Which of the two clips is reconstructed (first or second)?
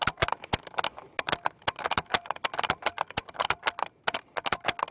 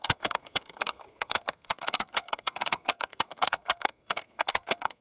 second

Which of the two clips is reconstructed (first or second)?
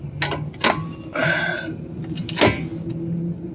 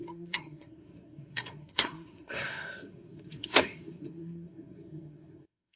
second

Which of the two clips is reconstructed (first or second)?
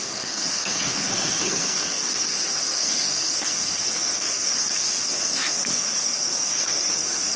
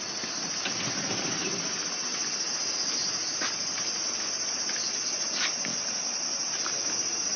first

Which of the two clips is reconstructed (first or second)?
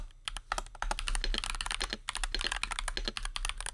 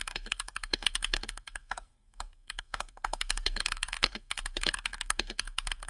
second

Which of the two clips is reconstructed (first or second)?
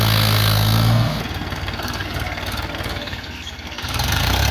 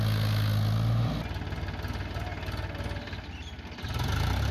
first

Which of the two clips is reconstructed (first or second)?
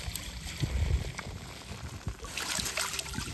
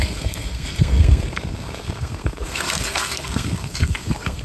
second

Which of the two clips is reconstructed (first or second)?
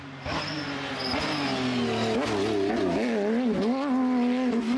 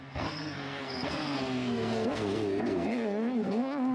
second